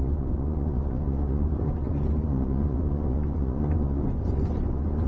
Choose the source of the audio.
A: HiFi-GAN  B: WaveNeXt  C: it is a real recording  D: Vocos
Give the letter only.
D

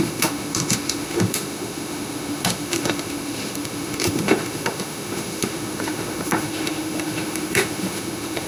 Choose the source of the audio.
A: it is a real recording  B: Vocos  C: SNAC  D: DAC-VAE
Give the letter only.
D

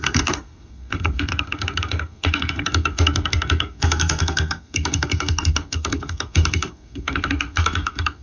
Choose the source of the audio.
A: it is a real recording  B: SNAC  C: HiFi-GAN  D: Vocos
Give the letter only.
B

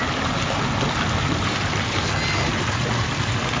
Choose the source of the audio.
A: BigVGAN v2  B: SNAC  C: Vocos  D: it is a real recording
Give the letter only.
D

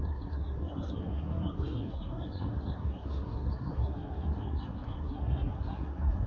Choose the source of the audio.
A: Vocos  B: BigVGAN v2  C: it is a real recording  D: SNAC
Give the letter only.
D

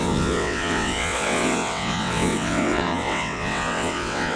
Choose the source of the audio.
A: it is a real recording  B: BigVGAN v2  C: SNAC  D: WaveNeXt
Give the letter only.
D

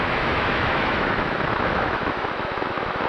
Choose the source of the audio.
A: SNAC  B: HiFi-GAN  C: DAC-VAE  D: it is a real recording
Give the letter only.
C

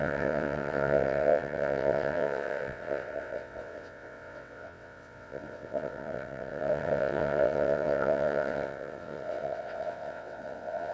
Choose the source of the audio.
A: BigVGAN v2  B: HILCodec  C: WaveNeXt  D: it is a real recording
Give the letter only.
C